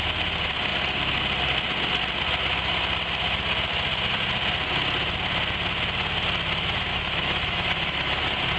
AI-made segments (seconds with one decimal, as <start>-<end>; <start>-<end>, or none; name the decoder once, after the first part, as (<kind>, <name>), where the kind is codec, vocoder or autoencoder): 6.9-8.2 (autoencoder, DAC-VAE)